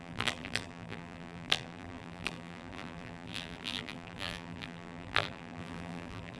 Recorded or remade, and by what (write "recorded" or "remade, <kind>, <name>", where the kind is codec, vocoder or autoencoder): remade, vocoder, BigVGAN v2